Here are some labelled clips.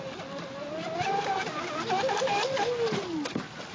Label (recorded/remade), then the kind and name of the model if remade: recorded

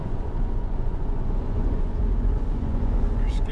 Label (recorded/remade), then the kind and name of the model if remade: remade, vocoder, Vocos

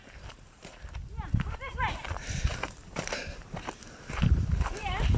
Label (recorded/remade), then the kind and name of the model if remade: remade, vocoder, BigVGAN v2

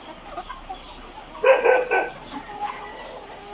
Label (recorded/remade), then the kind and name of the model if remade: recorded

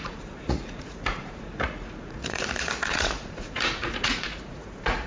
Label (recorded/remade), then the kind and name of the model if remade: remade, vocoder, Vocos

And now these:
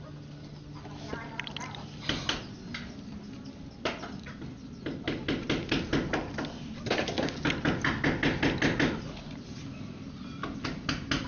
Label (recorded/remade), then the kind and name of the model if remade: recorded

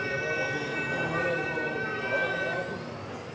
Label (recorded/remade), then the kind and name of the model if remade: recorded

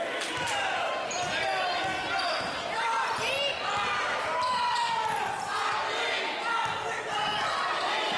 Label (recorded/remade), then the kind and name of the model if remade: recorded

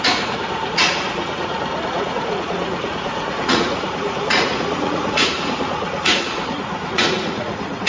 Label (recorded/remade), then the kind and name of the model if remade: remade, vocoder, Vocos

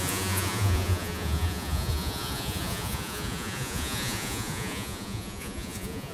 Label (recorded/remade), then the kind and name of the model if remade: remade, vocoder, Vocos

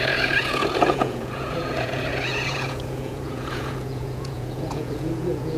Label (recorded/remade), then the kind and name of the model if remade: remade, vocoder, Vocos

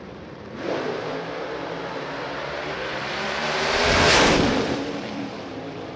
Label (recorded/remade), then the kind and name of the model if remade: remade, vocoder, BigVGAN v2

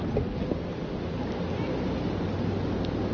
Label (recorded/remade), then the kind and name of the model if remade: recorded